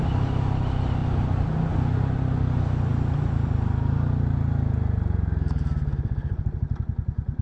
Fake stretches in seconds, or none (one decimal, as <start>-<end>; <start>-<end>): none